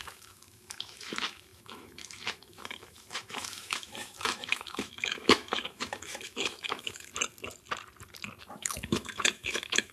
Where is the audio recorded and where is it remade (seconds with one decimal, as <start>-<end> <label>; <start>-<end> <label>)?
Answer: 0.0-7.1 remade; 7.1-8.4 recorded; 8.4-9.9 remade